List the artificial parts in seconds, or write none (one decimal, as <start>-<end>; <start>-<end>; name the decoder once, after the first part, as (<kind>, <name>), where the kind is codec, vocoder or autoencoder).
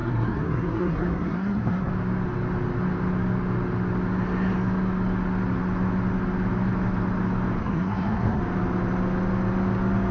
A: 0.0-1.9 (codec, SNAC); 7.6-8.4